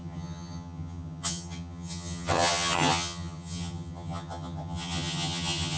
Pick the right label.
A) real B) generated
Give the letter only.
B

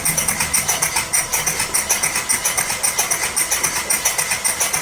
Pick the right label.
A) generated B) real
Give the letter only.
B